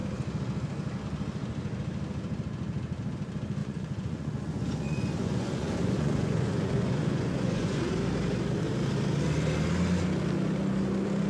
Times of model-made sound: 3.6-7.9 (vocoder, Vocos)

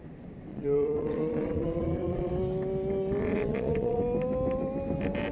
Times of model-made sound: 0.5-2.3 (vocoder, Vocos); 3.2-4.0

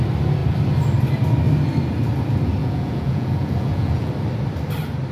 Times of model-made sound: 2.6-4.1 (vocoder, Vocos)

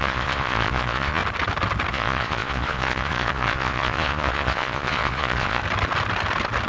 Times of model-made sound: 0.0-1.2 (vocoder, Vocos); 1.9-5.6

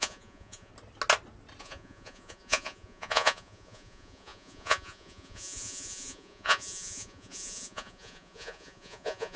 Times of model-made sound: 0.0-0.7 (vocoder, Vocos); 1.6-9.4

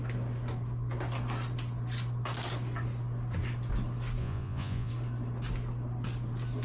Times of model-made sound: 4.2-4.9 (vocoder, Vocos)

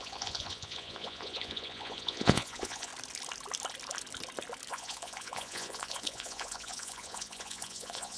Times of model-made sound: 0.0-2.9 (vocoder, Vocos); 4.7-8.2